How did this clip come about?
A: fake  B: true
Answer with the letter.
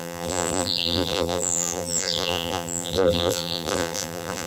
A